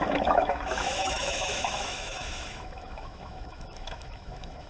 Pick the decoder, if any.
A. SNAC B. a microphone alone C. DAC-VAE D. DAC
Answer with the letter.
C